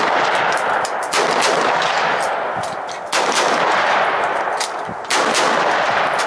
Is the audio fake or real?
real